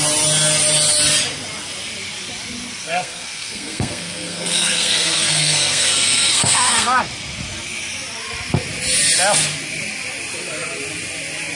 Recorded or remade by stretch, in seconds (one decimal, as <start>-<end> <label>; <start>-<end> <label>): 0.0-2.8 recorded; 2.8-7.0 remade; 7.0-11.5 recorded